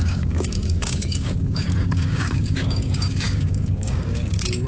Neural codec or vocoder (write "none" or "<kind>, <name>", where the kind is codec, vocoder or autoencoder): codec, DAC